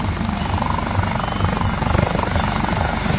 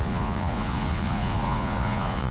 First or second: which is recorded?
first